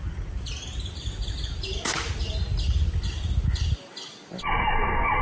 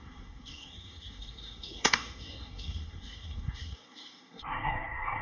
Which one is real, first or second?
first